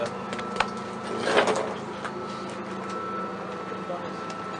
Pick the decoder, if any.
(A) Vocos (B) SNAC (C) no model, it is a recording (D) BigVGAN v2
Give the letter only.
C